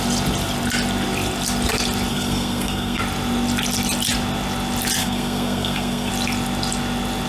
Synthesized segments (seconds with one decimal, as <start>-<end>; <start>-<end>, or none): 2.1-3.0; 5.0-6.1